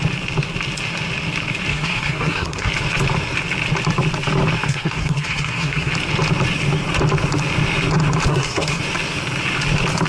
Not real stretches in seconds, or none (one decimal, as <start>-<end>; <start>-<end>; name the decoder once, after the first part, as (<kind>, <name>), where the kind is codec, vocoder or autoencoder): 1.7-2.7 (codec, SNAC); 4.7-5.9; 8.3-8.8